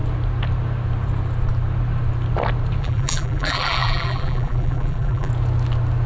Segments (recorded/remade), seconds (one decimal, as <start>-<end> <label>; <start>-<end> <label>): 0.0-2.8 recorded; 2.8-5.3 remade; 5.3-6.1 recorded